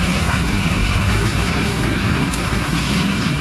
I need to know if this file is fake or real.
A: fake